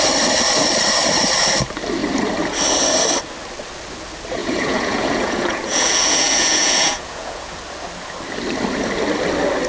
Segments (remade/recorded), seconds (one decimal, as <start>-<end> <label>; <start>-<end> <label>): 0.0-4.4 recorded; 4.4-7.6 remade; 7.6-9.7 recorded